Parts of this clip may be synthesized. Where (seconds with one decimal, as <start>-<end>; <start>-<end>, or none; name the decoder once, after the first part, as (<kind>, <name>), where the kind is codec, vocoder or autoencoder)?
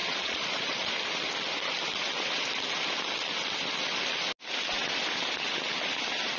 0.0-0.9 (vocoder, Vocos)